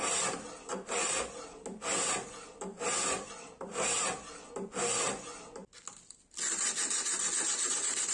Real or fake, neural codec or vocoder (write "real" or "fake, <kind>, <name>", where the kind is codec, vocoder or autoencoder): real